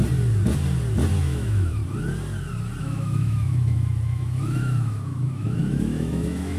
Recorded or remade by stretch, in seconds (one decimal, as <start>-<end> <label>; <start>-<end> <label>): 0.0-1.2 recorded; 1.2-1.8 remade; 1.8-2.8 recorded; 2.8-6.6 remade